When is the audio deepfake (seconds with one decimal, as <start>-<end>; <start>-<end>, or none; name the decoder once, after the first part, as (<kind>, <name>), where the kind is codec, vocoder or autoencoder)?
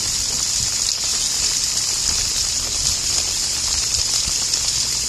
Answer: 1.1-4.2 (vocoder, BigVGAN v2)